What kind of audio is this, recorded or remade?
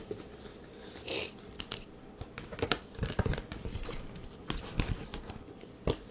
recorded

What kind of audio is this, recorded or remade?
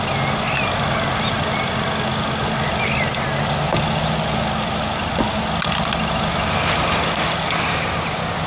recorded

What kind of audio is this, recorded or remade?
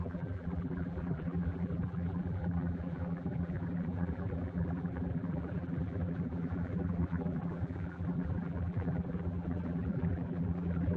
remade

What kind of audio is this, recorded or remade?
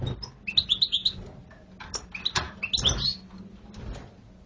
recorded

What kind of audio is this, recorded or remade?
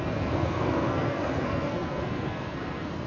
remade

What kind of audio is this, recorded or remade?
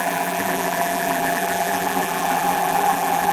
remade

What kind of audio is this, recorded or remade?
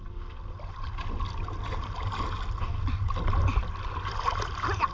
recorded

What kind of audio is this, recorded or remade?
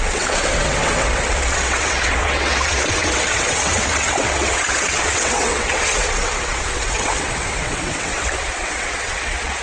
remade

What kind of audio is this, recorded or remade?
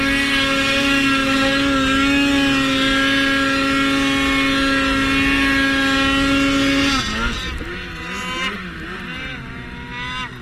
recorded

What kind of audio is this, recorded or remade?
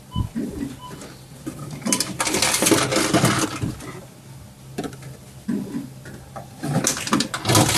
recorded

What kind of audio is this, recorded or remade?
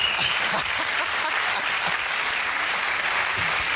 recorded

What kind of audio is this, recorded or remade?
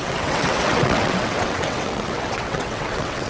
remade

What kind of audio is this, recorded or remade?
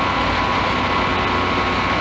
recorded